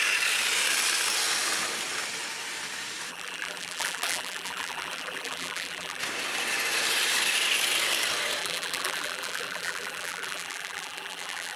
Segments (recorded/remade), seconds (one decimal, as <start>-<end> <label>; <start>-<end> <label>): 0.0-3.1 recorded; 3.1-6.0 remade; 6.0-8.4 recorded; 8.4-11.6 remade